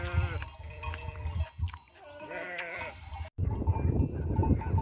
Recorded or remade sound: recorded